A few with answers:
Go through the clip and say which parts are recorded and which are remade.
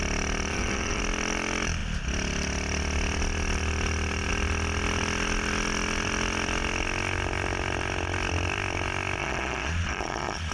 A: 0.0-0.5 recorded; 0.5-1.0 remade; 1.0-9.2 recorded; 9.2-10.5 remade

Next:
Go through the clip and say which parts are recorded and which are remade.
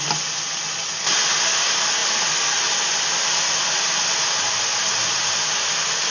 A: 0.0-6.1 recorded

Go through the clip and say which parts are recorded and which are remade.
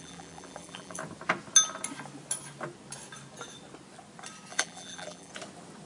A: 0.0-1.0 remade; 1.0-4.5 recorded; 4.5-5.3 remade; 5.3-5.9 recorded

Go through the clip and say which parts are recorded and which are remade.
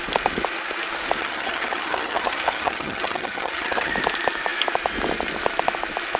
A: 0.0-1.2 recorded; 1.2-3.9 remade; 3.9-6.2 recorded